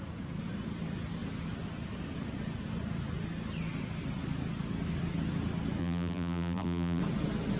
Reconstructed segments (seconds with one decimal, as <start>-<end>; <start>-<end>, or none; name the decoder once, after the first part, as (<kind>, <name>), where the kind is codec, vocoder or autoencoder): 5.8-7.0 (vocoder, BigVGAN v2)